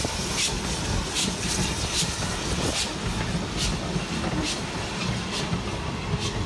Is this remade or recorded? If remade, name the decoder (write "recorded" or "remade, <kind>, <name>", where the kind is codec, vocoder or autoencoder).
recorded